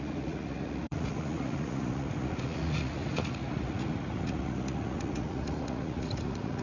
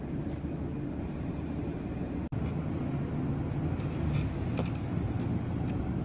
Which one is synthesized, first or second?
first